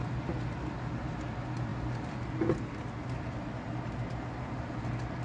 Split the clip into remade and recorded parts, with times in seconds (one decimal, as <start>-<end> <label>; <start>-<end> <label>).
0.0-5.2 recorded